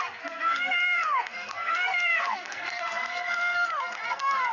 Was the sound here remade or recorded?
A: remade